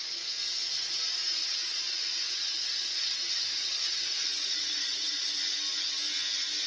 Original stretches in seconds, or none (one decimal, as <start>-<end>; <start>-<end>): 0.0-1.4; 5.4-6.7